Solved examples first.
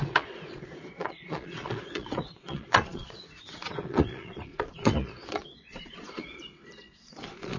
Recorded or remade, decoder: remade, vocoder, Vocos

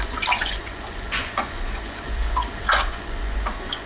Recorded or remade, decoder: remade, vocoder, Vocos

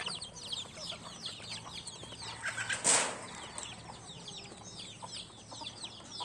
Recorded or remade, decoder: recorded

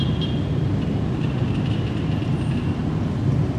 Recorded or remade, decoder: recorded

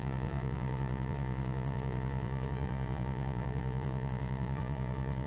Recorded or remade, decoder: remade, vocoder, Vocos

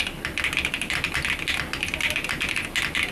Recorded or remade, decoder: recorded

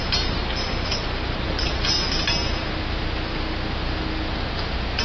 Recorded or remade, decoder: recorded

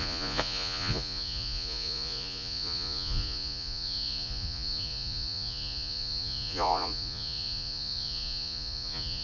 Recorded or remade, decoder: remade, vocoder, Vocos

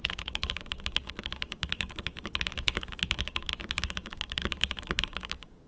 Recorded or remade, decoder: remade, codec, DAC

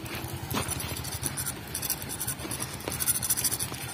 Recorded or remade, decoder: recorded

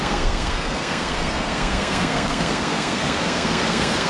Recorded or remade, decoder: remade, codec, SNAC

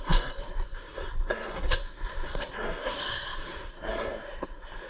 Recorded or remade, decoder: remade, codec, SNAC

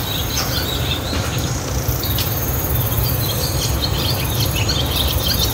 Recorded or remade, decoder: remade, vocoder, BigVGAN v2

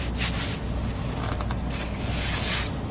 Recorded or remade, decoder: recorded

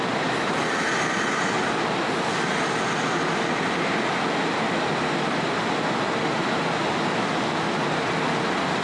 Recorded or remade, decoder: recorded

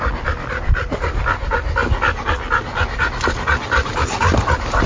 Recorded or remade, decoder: recorded